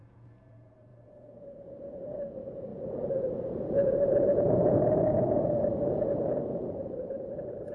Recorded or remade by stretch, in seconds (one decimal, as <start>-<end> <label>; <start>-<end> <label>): 0.0-7.7 remade